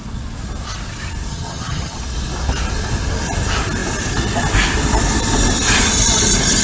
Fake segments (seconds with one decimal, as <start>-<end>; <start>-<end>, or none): 1.3-2.0